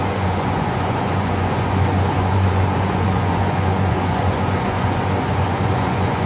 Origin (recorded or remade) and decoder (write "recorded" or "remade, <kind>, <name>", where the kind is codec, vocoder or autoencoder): remade, vocoder, Vocos